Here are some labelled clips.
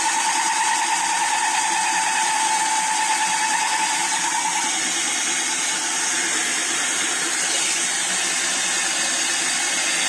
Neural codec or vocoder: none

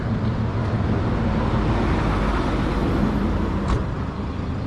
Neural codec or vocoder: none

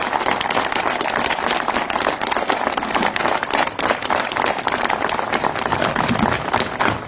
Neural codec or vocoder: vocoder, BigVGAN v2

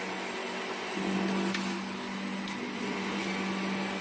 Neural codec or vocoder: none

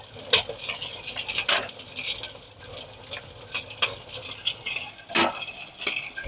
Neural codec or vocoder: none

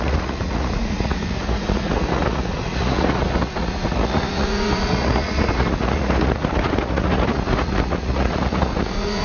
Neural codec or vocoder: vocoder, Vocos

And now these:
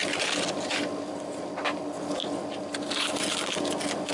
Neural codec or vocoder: none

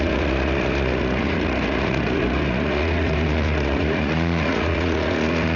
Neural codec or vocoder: vocoder, Vocos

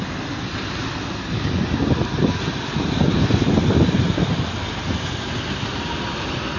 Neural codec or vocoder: none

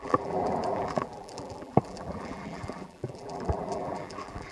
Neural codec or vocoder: vocoder, BigVGAN v2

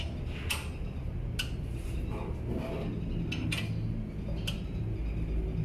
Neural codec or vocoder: none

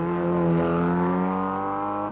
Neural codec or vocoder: none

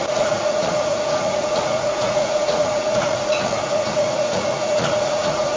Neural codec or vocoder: vocoder, Vocos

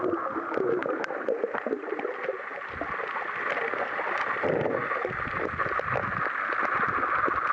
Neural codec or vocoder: none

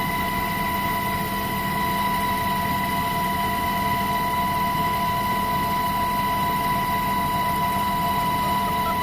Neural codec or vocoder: none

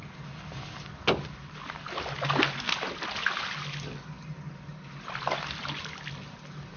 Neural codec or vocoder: none